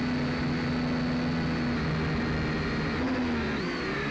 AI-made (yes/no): no